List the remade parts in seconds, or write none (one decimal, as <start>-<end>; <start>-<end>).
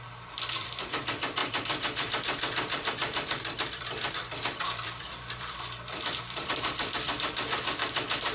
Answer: 0.0-8.3